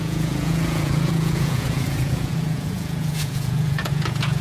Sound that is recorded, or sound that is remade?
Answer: remade